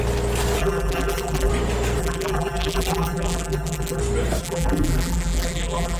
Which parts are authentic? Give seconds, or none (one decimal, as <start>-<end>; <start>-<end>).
0.0-0.6; 1.5-2.0; 4.0-4.4